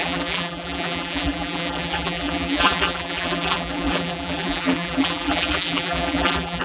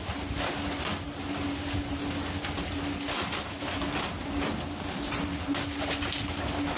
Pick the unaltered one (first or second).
second